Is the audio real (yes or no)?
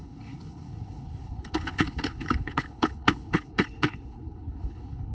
no